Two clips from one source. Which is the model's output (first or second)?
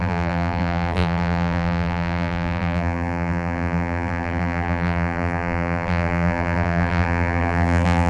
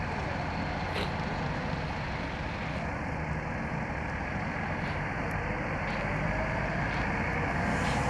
first